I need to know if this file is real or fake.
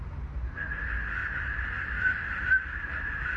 real